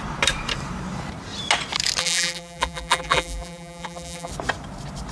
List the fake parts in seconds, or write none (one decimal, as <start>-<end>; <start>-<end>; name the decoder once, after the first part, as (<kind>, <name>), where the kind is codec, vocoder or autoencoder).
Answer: 2.0-4.3 (vocoder, BigVGAN v2)